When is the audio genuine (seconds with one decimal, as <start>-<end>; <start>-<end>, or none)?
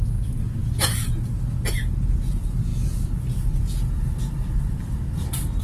0.0-5.6